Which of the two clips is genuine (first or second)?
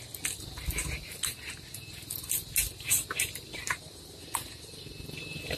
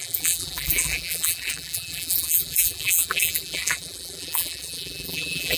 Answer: first